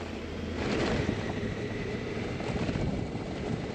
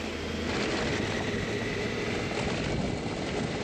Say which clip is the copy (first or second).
first